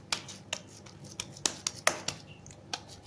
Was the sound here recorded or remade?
recorded